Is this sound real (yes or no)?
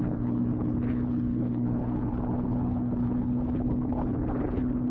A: no